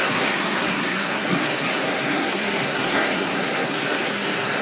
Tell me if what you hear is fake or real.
fake